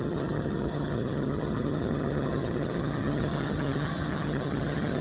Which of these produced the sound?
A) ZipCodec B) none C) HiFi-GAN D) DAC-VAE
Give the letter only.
C